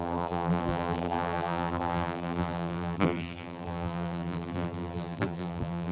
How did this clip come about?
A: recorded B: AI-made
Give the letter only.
B